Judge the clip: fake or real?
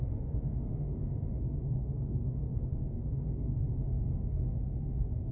fake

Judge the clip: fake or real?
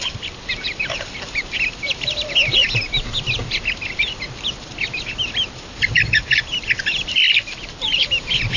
fake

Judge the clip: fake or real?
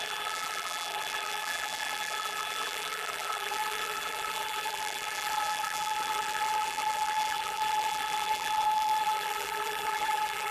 fake